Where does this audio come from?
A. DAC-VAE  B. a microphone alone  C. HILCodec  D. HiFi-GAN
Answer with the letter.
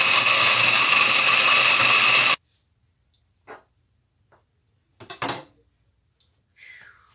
B